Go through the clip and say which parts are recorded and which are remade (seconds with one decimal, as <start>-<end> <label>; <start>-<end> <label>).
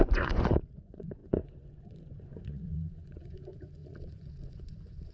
0.0-5.1 remade